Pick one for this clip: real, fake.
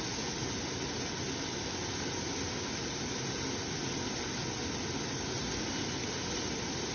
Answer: real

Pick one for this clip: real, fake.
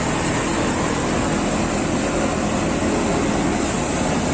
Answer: real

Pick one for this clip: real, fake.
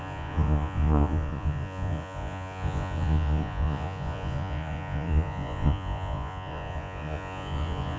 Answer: fake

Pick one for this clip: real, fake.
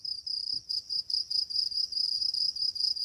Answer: real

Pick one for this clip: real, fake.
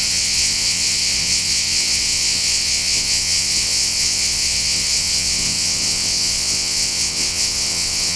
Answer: fake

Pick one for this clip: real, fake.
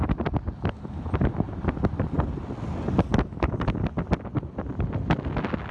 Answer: real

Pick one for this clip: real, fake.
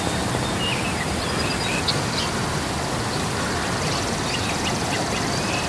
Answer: real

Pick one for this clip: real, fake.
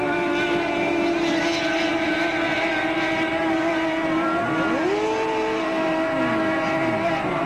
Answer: real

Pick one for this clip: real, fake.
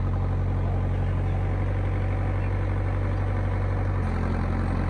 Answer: real